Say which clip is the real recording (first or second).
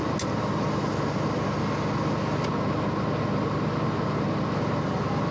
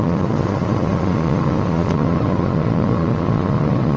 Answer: first